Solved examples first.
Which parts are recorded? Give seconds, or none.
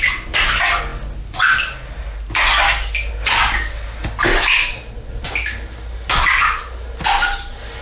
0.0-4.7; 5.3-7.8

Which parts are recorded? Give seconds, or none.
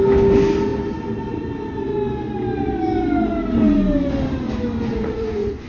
0.0-4.9